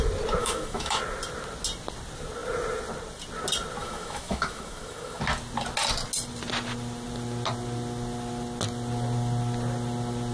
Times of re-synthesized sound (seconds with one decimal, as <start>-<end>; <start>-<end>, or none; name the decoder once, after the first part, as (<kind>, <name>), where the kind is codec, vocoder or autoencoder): 0.4-1.0 (autoencoder, DAC-VAE); 3.8-5.2